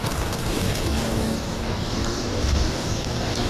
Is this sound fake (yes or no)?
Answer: yes